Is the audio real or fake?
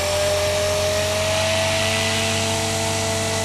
real